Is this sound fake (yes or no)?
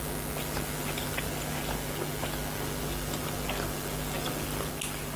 no